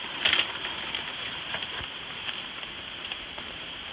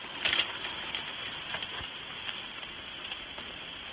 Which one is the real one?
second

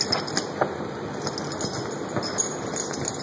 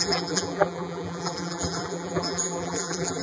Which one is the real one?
first